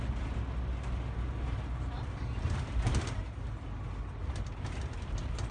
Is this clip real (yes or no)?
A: yes